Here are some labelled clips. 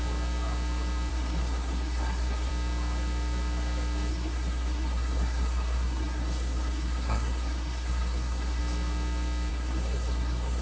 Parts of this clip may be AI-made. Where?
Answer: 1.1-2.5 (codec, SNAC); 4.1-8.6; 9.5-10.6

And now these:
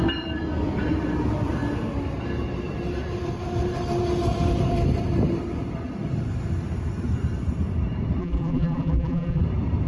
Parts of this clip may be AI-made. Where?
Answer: 8.2-9.4 (vocoder, BigVGAN v2)